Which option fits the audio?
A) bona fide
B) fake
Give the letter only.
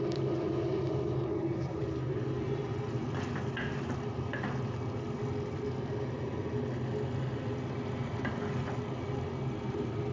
A